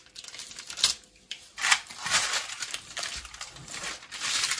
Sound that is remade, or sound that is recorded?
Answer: recorded